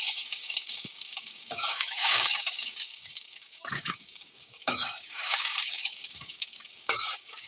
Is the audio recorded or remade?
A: remade